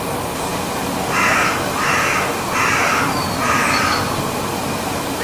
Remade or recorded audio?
recorded